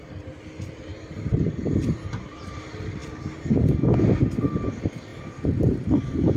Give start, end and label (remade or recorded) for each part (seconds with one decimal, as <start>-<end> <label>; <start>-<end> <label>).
0.0-0.9 recorded; 0.9-2.6 remade; 2.6-5.1 recorded; 5.1-6.4 remade